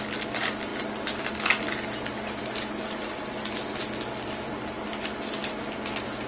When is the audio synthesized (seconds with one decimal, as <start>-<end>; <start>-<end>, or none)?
none